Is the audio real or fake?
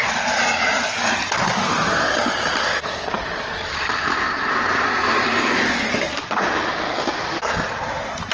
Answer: real